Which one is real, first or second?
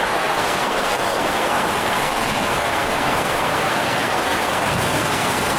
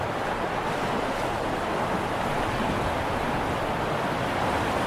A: second